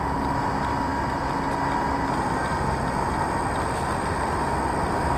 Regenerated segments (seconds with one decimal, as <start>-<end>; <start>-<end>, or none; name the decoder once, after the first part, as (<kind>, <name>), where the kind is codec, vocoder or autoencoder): none